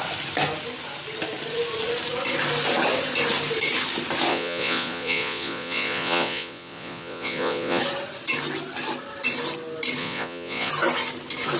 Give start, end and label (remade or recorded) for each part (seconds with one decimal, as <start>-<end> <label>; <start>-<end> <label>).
0.0-4.3 recorded; 4.3-7.8 remade; 7.8-10.0 recorded; 10.0-10.7 remade; 10.7-11.6 recorded